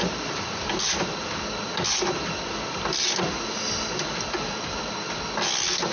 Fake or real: real